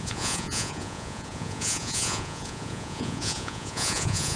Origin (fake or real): fake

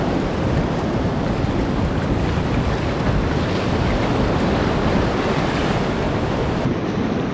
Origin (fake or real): real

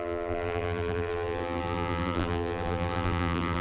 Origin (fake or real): fake